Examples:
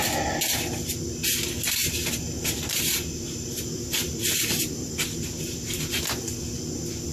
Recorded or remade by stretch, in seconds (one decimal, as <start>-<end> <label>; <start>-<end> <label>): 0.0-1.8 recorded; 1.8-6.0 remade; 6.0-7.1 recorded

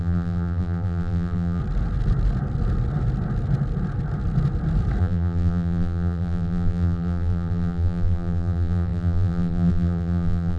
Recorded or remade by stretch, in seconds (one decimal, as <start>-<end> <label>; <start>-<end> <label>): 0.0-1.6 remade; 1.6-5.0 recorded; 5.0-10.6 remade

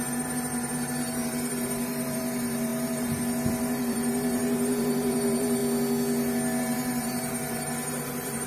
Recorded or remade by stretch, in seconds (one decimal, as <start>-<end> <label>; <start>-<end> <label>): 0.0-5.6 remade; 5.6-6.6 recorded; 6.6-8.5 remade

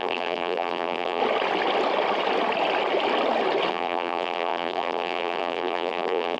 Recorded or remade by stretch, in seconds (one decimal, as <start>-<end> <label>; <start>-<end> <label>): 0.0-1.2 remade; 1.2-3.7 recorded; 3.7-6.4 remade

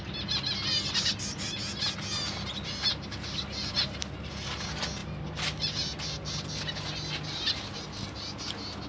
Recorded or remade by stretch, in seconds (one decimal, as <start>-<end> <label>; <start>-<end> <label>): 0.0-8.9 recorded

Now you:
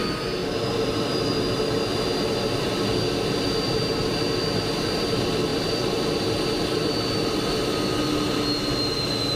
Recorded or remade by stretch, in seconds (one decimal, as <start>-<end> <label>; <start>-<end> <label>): 0.0-9.4 recorded

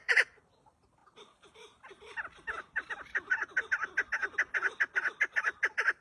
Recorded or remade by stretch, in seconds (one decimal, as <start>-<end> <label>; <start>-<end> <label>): 0.0-1.0 remade; 1.0-2.9 recorded; 2.9-3.3 remade; 3.3-5.0 recorded; 5.0-6.0 remade

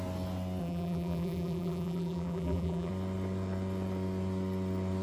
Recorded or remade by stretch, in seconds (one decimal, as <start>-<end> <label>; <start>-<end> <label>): 0.0-0.6 recorded; 0.6-2.9 remade; 2.9-5.0 recorded